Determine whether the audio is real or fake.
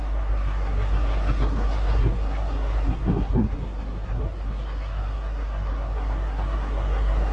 fake